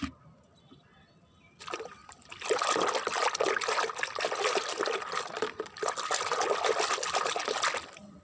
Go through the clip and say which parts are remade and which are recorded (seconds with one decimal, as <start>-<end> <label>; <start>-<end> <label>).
0.0-8.2 recorded